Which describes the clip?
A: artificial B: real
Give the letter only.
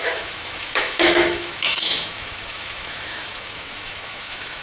A